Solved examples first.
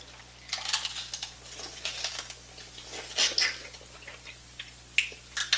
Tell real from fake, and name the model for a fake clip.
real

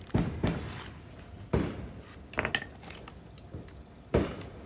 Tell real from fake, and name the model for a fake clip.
real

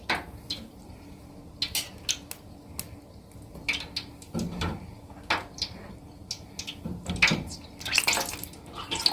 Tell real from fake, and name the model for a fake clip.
real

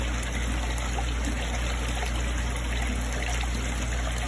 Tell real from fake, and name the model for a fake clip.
real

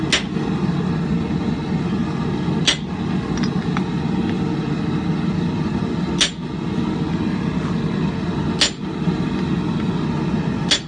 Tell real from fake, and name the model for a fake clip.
real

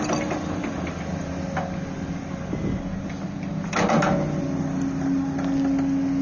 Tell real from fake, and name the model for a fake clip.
real